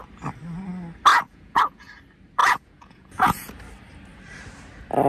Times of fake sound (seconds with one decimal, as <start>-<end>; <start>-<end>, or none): 1.1-1.9; 2.4-3.6